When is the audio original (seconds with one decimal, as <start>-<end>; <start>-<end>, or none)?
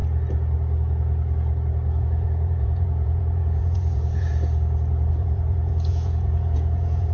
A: 0.0-2.0; 4.3-5.1